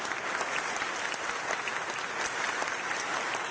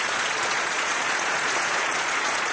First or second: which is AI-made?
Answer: second